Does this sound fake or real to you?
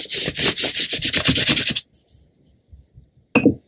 real